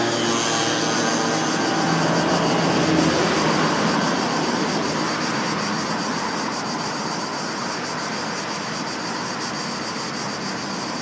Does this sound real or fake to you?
real